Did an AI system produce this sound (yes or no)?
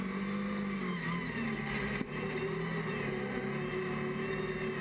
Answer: no